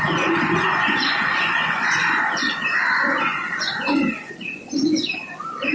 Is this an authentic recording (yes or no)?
no